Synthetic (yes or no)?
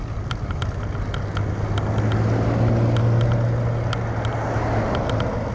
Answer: no